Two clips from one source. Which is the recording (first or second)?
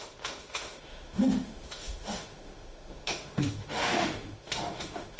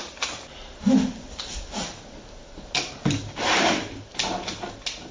second